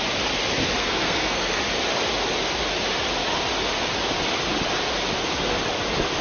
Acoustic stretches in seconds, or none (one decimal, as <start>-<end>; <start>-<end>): 0.0-0.8; 1.6-6.2